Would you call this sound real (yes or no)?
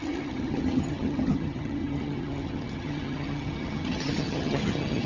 no